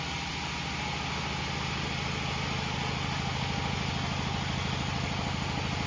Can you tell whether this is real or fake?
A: real